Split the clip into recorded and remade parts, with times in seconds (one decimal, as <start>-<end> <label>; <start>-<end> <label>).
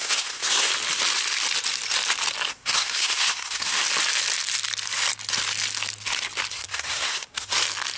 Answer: 0.0-0.7 remade; 0.7-2.5 recorded; 2.5-3.8 remade; 3.8-6.5 recorded; 6.5-7.5 remade; 7.5-8.0 recorded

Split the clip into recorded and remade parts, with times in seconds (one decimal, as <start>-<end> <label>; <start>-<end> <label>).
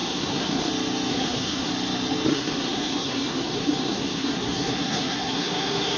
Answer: 0.0-0.7 remade; 0.7-1.1 recorded; 1.1-1.7 remade; 1.7-2.3 recorded; 2.3-6.0 remade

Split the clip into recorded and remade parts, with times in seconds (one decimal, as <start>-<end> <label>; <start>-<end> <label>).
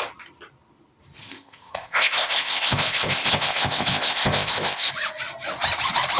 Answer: 0.0-1.2 recorded; 1.2-4.9 remade; 4.9-6.2 recorded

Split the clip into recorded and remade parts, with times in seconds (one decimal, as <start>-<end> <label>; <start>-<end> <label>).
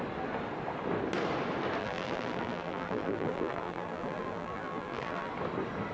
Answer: 0.0-1.8 recorded; 1.8-5.3 remade; 5.3-5.9 recorded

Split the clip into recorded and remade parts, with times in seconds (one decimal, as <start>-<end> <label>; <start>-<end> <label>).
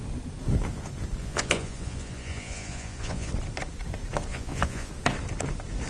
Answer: 0.0-1.2 recorded; 1.2-3.3 remade; 3.3-4.3 recorded; 4.3-4.9 remade; 4.9-5.9 recorded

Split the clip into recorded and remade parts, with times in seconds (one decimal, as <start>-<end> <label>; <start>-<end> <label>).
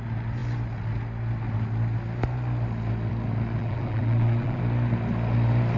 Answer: 0.0-3.6 recorded; 3.6-4.6 remade; 4.6-5.8 recorded